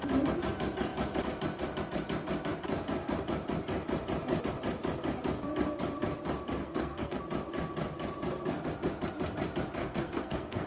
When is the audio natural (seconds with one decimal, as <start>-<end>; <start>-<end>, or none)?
0.0-6.6; 7.2-9.8